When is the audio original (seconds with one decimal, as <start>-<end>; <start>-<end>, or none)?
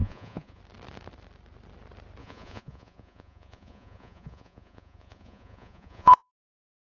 0.6-2.2; 6.3-6.9